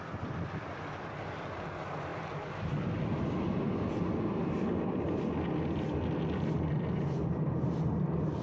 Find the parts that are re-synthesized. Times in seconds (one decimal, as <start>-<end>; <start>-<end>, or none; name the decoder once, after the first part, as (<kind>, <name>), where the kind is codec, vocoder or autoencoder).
none